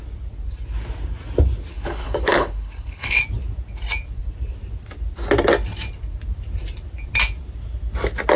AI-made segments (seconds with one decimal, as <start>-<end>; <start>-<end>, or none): 1.7-3.2